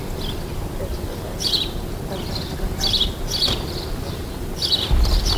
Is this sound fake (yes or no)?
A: no